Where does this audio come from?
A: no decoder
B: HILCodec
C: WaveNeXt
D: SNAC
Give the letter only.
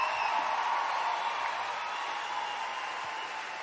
A